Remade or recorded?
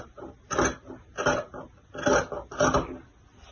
recorded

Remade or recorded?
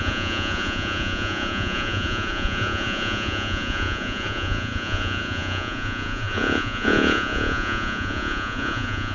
remade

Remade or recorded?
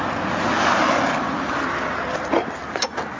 recorded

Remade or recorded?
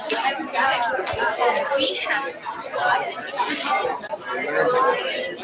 recorded